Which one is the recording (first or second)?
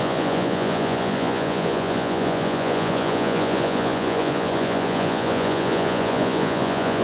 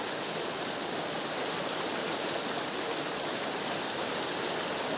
second